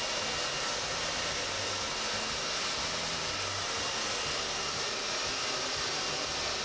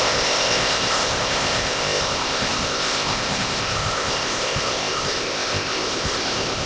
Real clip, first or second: first